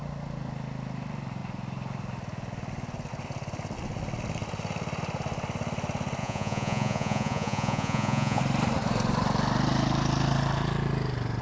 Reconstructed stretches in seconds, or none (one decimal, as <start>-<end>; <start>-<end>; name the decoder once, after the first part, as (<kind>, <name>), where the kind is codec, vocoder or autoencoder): 6.2-8.4 (vocoder, Vocos)